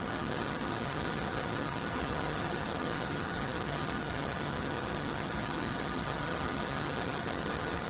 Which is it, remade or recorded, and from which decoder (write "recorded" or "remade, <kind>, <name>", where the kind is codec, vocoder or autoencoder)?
remade, vocoder, HiFi-GAN